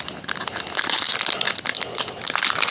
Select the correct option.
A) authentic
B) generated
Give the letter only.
A